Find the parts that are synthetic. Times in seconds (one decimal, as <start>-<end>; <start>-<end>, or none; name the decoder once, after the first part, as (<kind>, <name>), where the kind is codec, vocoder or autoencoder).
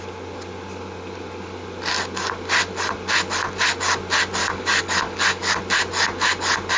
4.4-5.6 (codec, DAC)